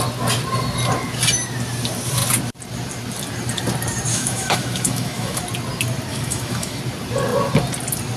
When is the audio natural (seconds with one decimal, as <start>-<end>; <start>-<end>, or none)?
0.0-4.1; 5.4-6.1; 6.8-8.2